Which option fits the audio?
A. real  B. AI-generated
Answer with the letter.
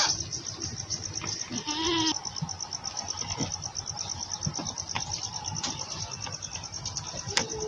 A